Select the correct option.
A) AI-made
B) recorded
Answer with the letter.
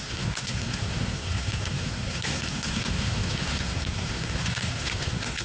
A